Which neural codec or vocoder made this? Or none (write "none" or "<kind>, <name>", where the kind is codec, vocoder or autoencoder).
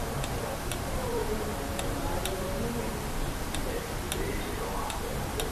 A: vocoder, BigVGAN v2